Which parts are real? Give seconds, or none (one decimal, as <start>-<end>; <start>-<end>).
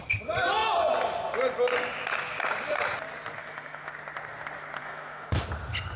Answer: 0.0-3.4; 3.9-4.8; 5.3-6.0